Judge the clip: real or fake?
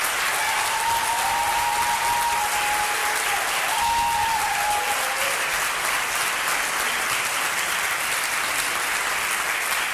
real